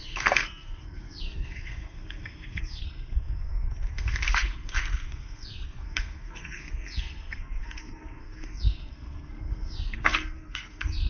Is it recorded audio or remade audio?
remade